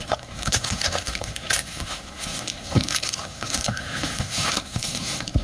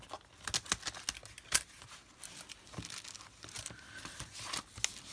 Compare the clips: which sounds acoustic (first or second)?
second